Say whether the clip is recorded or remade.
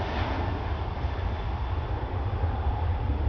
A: recorded